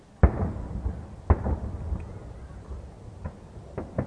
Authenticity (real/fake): real